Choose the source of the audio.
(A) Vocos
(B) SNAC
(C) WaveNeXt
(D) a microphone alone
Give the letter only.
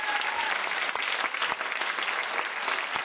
D